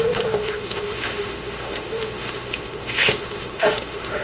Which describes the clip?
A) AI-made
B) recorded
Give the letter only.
A